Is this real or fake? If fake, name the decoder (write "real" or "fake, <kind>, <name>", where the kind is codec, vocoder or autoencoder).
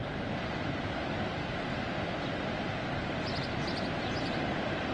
real